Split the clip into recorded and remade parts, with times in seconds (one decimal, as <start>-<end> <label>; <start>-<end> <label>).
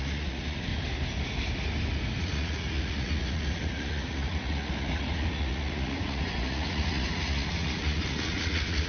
0.0-0.7 remade; 0.7-2.2 recorded; 2.2-8.9 remade